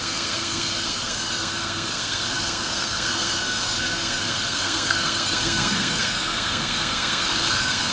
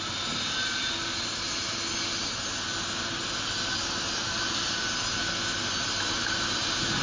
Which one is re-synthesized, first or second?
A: first